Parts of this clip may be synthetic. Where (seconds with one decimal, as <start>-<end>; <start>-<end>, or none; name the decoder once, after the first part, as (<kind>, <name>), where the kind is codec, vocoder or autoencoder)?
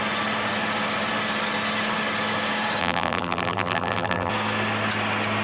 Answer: 2.8-4.3 (vocoder, BigVGAN v2)